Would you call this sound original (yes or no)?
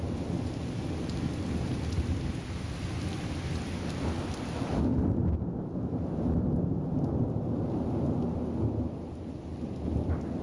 yes